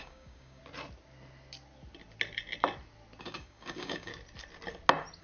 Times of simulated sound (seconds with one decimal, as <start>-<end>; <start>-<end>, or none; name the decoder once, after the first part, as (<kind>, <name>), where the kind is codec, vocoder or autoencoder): 0.0-0.6 (codec, DAC); 3.2-4.1